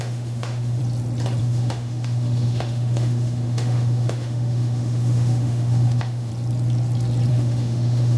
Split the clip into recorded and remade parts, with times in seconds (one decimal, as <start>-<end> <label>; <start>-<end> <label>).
0.0-0.8 remade; 0.8-1.4 recorded; 1.4-6.3 remade; 6.3-7.3 recorded; 7.3-8.2 remade